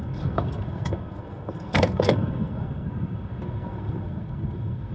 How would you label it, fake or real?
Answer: fake